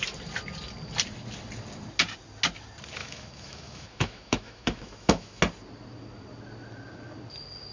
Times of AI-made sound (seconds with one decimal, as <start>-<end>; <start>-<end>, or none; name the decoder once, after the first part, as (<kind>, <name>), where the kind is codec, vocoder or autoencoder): 3.0-5.4 (autoencoder, DAC-VAE)